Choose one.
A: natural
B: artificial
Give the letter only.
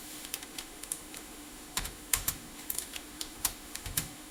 B